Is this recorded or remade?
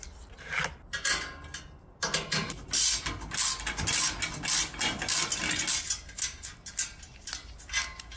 recorded